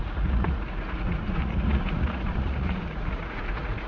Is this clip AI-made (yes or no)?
yes